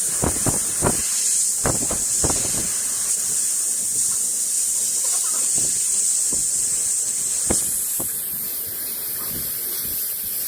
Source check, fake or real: real